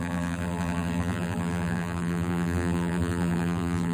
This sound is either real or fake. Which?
fake